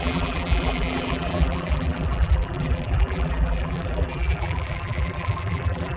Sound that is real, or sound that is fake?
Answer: fake